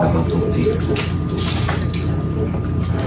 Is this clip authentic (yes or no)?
yes